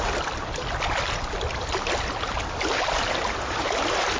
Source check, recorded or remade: recorded